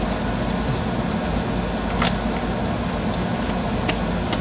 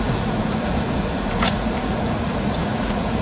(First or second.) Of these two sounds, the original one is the first